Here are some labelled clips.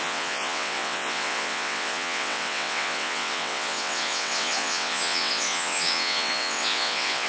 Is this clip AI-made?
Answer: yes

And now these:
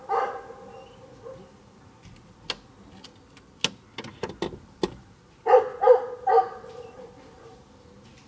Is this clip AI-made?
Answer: no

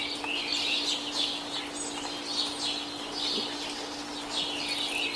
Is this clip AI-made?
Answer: no